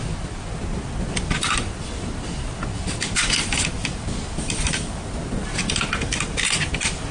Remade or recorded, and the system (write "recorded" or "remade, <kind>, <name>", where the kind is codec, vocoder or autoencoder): recorded